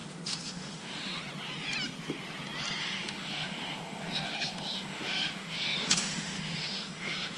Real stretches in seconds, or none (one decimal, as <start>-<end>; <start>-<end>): 1.2-2.8